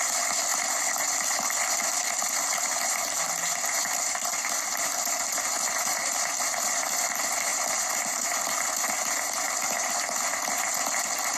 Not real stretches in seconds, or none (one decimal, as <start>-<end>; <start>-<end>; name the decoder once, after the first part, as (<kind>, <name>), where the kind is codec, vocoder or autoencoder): none